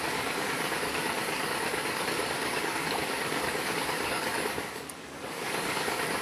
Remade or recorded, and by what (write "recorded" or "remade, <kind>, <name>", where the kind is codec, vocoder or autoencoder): remade, codec, DAC